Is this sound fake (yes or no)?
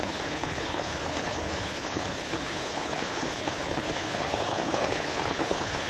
yes